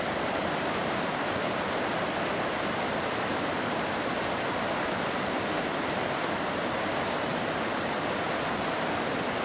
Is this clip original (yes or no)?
no